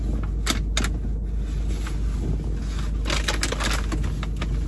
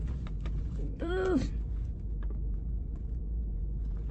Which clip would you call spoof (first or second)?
second